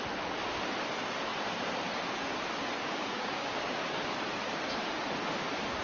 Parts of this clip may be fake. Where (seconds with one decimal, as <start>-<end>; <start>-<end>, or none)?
2.8-3.6